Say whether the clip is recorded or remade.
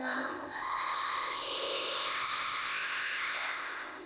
remade